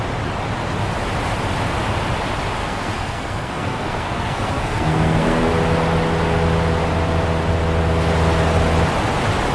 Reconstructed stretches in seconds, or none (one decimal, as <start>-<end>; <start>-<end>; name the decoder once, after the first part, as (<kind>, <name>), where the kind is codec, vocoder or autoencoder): 2.6-5.5 (codec, SNAC)